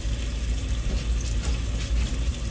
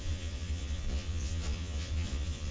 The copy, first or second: second